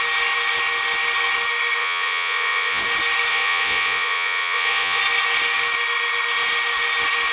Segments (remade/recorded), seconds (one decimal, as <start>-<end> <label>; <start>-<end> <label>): 0.0-1.8 recorded; 1.8-2.8 remade; 2.8-3.3 recorded; 3.3-5.0 remade; 5.0-7.3 recorded